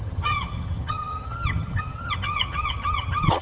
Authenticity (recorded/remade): remade